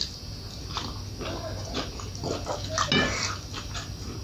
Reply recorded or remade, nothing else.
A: recorded